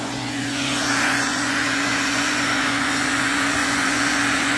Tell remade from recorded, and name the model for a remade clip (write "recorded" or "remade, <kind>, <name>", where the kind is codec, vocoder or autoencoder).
remade, vocoder, Vocos